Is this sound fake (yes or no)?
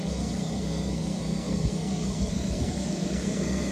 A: yes